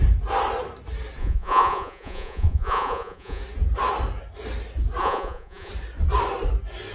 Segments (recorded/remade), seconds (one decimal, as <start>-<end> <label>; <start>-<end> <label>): 0.0-1.2 recorded; 1.2-3.4 remade; 3.4-5.0 recorded; 5.0-5.7 remade; 5.7-6.9 recorded